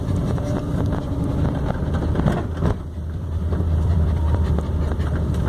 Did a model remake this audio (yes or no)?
yes